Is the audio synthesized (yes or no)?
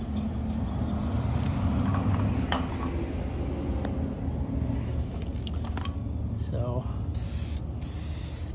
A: no